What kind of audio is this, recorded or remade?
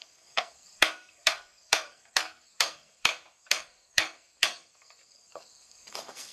remade